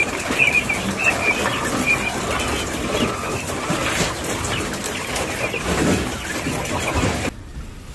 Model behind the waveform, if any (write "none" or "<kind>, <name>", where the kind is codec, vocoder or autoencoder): none